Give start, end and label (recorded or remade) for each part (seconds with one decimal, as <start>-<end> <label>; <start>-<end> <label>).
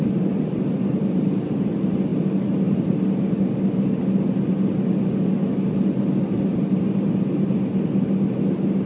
0.0-8.9 recorded